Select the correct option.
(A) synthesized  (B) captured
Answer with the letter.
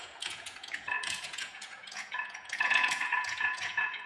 A